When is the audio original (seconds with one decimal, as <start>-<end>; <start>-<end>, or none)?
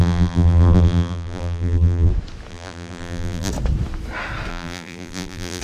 2.1-2.5; 3.5-4.5